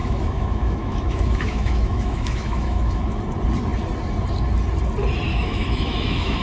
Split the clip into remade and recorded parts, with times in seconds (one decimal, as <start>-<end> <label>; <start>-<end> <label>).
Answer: 0.0-3.2 remade; 3.2-5.3 recorded; 5.3-6.4 remade